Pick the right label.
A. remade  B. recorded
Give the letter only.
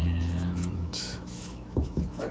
A